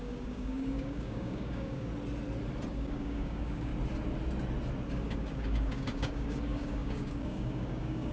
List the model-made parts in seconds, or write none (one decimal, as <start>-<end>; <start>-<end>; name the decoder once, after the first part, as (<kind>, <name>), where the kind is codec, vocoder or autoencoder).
0.0-1.9 (codec, DAC); 2.7-3.7; 4.9-8.1